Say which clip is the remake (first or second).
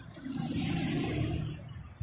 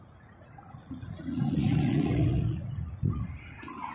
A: second